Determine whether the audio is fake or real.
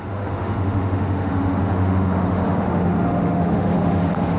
fake